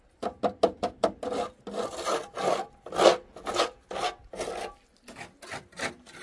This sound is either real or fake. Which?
real